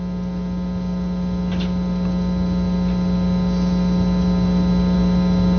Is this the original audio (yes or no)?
yes